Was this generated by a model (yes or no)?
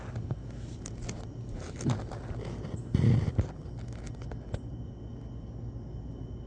no